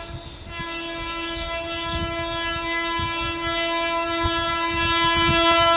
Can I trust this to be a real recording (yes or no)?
yes